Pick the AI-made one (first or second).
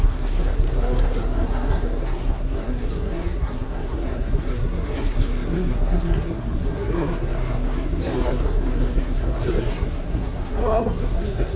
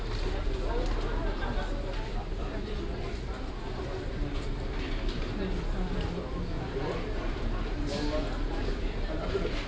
first